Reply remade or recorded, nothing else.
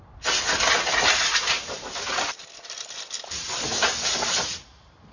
recorded